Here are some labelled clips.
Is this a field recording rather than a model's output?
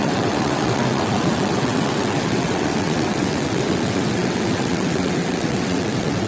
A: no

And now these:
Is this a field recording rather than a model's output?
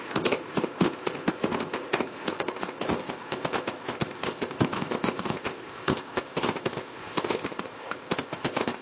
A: no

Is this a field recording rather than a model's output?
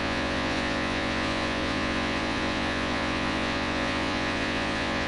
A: no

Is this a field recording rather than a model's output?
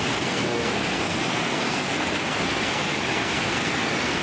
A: no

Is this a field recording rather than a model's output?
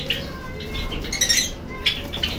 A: yes